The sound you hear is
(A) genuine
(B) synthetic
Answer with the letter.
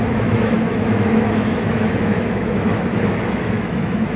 B